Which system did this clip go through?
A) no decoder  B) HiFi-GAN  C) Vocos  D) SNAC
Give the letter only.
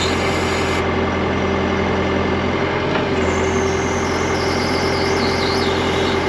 A